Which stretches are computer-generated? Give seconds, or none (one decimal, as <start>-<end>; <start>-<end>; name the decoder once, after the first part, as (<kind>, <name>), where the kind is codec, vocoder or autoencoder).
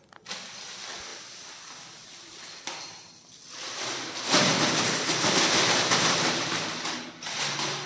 none